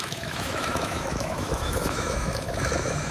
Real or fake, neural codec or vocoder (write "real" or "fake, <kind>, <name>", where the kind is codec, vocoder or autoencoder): fake, autoencoder, DAC-VAE